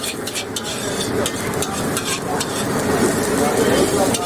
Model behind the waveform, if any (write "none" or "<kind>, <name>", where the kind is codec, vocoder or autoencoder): none